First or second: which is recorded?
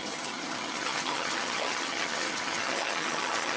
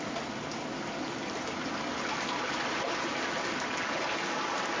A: second